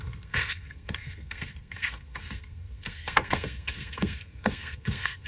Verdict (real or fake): fake